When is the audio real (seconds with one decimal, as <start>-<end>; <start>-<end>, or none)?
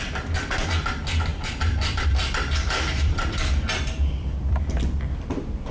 0.0-1.3; 4.7-5.7